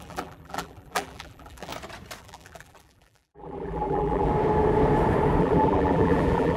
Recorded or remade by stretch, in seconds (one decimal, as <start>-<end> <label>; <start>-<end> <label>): 0.0-1.7 remade; 1.7-2.2 recorded; 2.2-4.3 remade; 4.3-5.4 recorded; 5.4-6.6 remade